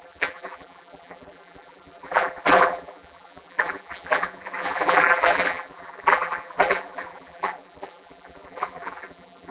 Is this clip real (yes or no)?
no